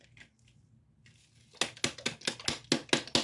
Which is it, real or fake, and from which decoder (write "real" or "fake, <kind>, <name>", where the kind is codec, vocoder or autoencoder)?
real